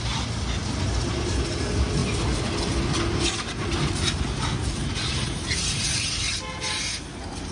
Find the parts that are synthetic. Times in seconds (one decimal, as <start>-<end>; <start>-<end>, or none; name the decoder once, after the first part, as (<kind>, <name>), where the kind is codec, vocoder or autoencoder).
none